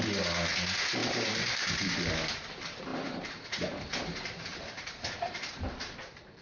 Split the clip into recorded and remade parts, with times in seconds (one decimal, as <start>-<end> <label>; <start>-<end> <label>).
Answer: 0.0-1.0 recorded; 1.0-2.1 remade; 2.1-2.9 recorded; 2.9-6.4 remade